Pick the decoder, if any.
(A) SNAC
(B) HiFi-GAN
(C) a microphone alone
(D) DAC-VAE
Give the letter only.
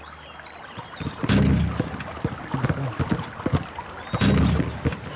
C